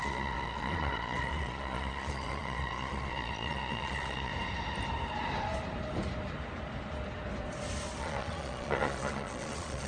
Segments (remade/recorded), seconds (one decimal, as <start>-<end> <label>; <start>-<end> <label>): 0.0-4.3 remade; 4.3-8.0 recorded; 8.0-9.9 remade